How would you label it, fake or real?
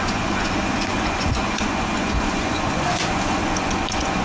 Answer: fake